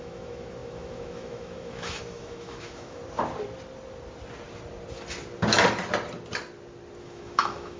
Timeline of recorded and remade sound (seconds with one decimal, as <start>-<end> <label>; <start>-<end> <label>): 0.0-3.0 remade; 3.0-7.0 recorded; 7.0-7.8 remade